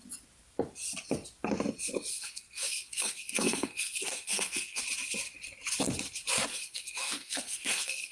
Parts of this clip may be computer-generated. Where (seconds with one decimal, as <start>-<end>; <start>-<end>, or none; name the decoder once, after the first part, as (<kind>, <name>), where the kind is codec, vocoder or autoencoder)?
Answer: 2.1-4.8 (codec, SNAC); 6.5-8.1